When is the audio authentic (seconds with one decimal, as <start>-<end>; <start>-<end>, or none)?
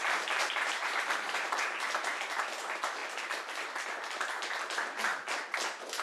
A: 1.7-6.0